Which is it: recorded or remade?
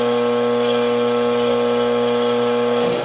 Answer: recorded